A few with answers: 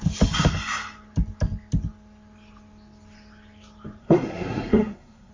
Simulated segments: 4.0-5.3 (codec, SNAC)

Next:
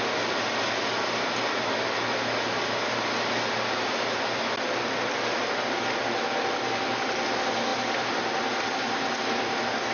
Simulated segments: none

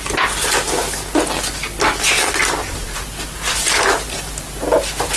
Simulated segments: none

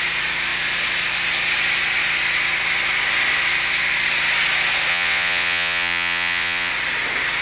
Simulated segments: 4.9-6.7 (vocoder, WaveNeXt)

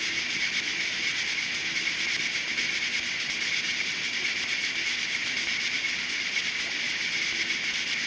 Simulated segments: none

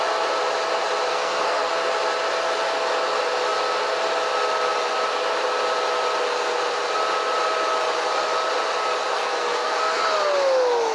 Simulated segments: 1.1-1.7 (codec, SNAC); 9.1-10.0

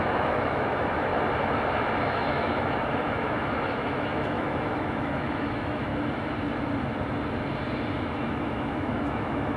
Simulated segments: 0.0-1.1 (autoencoder, DAC-VAE); 2.0-5.9; 7.9-9.6